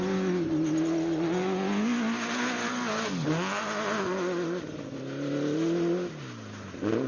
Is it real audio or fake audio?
real